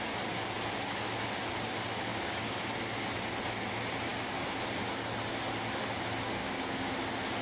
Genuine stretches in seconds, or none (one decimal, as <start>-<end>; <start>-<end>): 0.0-2.1; 2.6-6.4; 6.9-7.4